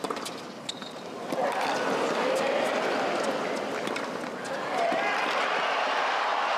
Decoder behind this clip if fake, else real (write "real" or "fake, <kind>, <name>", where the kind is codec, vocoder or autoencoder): real